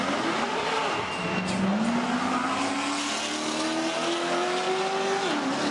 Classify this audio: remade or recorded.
recorded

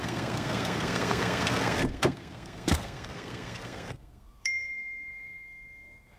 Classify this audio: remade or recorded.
remade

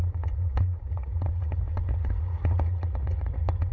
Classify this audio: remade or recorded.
remade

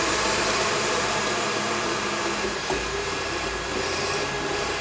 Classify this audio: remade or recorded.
remade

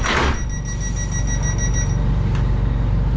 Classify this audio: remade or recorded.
recorded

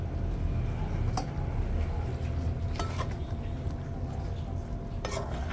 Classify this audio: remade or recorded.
recorded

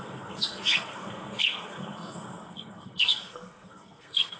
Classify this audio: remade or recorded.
remade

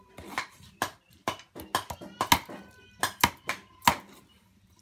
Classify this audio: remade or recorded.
recorded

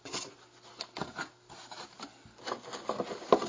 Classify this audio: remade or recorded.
recorded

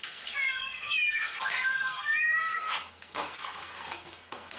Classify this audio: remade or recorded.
remade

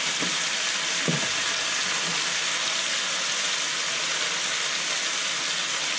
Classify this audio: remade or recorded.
remade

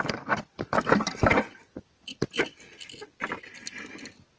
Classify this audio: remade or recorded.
recorded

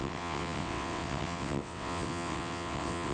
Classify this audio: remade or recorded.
remade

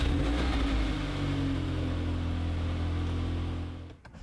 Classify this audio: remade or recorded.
recorded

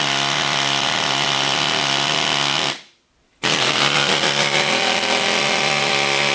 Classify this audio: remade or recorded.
recorded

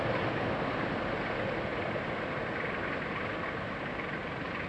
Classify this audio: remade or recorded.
recorded